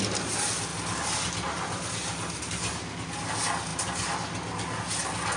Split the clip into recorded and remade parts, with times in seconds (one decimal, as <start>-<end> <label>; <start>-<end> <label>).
0.0-5.4 recorded